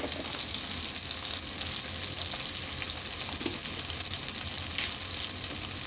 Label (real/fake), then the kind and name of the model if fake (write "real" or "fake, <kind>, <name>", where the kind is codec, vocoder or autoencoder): real